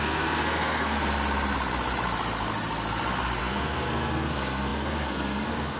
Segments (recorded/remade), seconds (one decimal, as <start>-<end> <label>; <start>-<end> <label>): 0.0-1.0 remade; 1.0-3.4 recorded; 3.4-5.8 remade